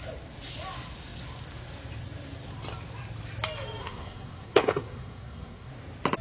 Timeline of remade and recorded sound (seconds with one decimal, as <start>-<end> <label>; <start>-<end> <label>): 0.0-3.8 recorded; 3.8-5.7 remade; 5.7-6.2 recorded